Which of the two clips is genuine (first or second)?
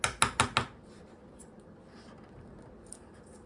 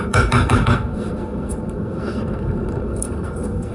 first